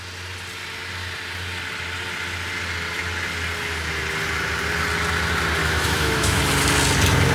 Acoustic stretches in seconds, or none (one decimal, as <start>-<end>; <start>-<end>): 0.0-5.6; 6.4-7.3